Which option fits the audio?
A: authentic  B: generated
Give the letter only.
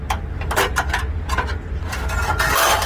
A